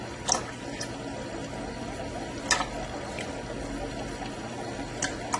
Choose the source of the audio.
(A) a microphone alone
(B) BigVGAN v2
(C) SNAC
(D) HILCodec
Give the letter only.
A